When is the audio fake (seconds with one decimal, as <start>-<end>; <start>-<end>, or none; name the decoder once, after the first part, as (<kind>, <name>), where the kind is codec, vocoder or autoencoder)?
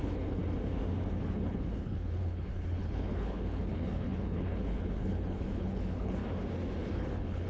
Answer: 0.0-0.4 (codec, HILCodec); 1.1-6.2; 6.9-7.5